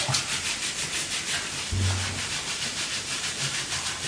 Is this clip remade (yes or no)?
no